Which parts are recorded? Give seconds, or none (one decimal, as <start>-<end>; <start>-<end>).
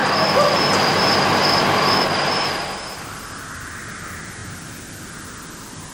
0.0-5.9